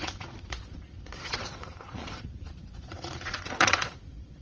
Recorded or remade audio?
remade